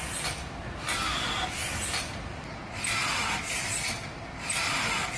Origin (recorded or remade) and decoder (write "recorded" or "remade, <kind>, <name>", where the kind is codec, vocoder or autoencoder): recorded